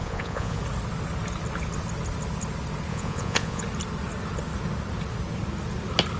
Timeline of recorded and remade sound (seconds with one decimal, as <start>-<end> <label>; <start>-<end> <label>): 0.0-0.6 remade; 0.6-2.9 recorded; 2.9-3.6 remade; 3.6-6.2 recorded